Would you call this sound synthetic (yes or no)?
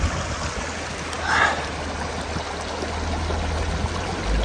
no